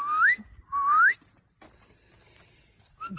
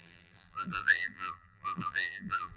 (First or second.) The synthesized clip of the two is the second